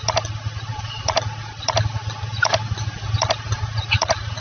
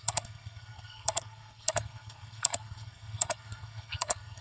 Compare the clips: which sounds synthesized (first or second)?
second